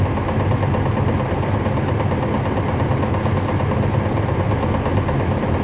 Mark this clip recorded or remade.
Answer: recorded